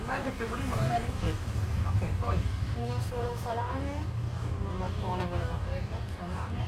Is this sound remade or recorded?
remade